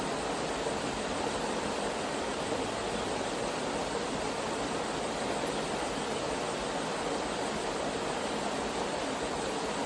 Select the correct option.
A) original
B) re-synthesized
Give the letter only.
A